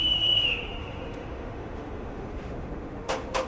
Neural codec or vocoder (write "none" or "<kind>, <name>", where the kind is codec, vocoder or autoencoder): autoencoder, DAC-VAE